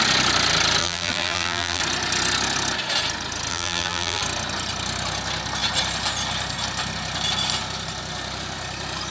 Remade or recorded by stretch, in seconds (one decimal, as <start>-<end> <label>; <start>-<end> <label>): 0.0-0.8 recorded; 0.8-1.8 remade; 1.8-3.5 recorded; 3.5-4.2 remade; 4.2-9.1 recorded